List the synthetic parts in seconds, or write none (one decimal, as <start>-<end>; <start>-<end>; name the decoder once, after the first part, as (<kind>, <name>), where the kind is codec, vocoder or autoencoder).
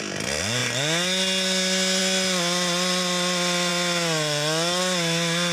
none